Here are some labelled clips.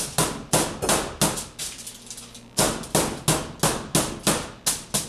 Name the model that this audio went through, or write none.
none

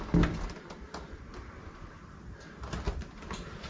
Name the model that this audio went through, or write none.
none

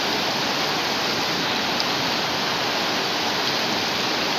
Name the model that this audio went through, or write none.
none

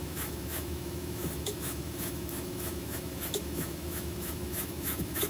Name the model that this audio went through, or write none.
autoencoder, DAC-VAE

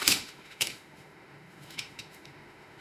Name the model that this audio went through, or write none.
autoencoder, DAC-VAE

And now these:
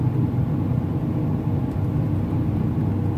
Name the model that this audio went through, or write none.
none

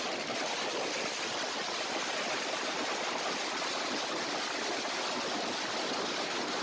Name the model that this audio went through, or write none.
none